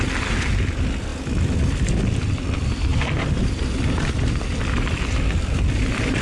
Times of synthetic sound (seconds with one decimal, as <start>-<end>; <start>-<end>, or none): none